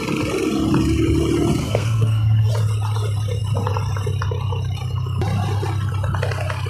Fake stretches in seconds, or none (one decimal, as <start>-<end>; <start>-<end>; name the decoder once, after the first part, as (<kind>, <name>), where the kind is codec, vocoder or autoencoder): 1.6-2.5 (codec, SNAC)